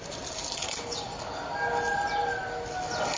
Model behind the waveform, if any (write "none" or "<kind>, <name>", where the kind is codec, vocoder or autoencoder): none